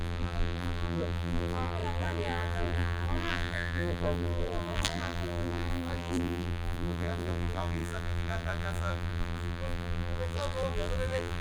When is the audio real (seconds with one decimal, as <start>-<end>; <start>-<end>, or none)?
none